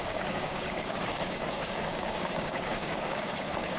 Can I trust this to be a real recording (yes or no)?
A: no